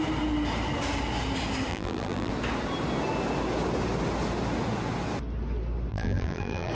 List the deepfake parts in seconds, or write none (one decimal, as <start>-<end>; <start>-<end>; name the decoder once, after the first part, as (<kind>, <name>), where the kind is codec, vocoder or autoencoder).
1.7-2.3 (vocoder, BigVGAN v2); 5.9-6.7